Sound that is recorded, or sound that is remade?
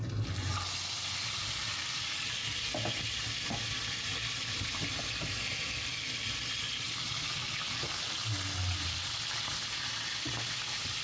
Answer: recorded